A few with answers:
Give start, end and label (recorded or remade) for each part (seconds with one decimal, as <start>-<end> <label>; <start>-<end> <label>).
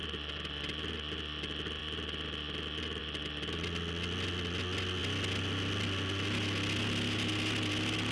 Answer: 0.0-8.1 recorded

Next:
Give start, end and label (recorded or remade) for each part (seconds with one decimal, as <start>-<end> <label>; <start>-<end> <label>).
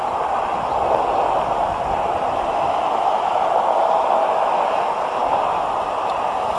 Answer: 0.0-6.6 recorded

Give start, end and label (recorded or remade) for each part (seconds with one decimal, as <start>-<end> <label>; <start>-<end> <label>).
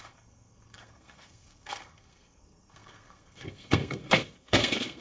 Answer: 0.0-5.0 remade